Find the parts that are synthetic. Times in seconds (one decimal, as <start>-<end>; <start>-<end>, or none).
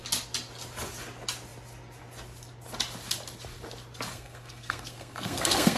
4.1-5.8